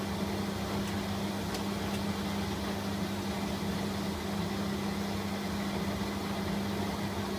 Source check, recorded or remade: recorded